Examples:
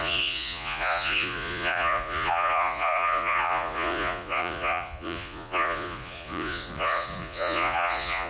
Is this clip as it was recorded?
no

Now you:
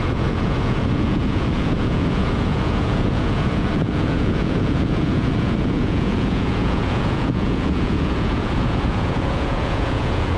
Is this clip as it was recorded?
no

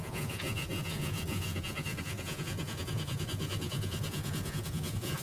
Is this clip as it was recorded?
no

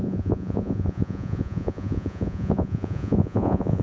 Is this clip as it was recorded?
no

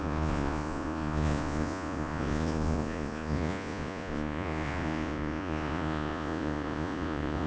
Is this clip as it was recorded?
no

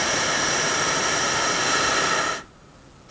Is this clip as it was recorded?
yes